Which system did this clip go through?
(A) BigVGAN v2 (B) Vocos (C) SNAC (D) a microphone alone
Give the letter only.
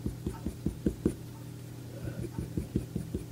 A